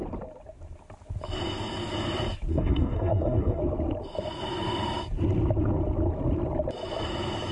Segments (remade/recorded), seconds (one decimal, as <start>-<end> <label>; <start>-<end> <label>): 0.0-2.5 recorded; 2.5-3.6 remade; 3.6-7.5 recorded